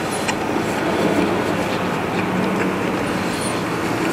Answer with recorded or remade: recorded